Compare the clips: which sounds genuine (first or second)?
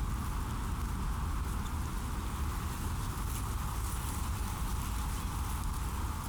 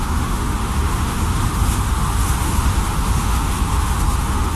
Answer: first